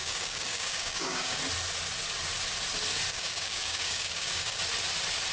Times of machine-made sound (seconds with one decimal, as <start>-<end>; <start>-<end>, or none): 0.0-1.4; 3.1-4.6